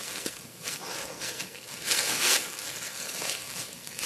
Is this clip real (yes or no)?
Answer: no